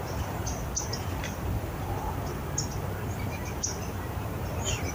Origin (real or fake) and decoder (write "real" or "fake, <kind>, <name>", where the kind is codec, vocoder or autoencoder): real